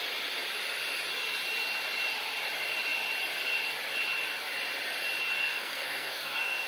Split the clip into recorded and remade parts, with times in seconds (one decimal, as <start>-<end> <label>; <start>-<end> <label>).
0.0-5.4 recorded; 5.4-6.7 remade